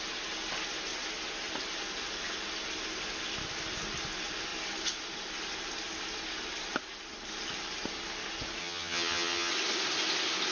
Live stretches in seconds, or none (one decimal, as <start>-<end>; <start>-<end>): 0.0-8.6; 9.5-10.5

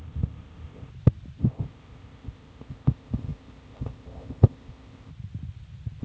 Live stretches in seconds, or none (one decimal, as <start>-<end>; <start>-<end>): 0.9-1.4; 5.1-6.0

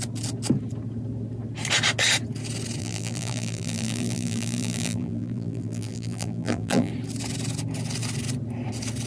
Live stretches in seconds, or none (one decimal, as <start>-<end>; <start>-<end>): 0.0-2.8; 6.9-9.1

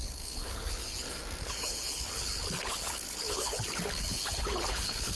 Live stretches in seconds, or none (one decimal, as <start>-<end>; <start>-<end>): 0.8-1.4

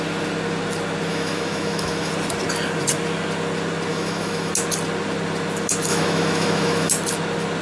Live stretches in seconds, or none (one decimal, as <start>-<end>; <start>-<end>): 0.0-1.1; 2.1-3.9; 4.5-5.9; 6.9-7.6

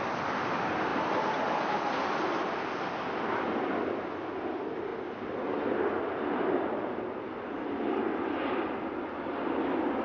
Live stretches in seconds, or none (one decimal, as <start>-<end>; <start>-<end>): 0.0-10.0

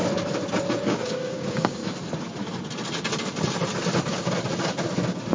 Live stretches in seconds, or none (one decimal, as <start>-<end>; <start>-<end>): 0.0-0.7; 1.8-5.3

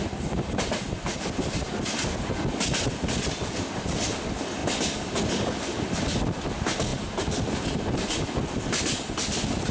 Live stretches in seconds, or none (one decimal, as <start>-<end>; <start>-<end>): 0.0-9.7